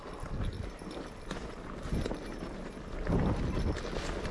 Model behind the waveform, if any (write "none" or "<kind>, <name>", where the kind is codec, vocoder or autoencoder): none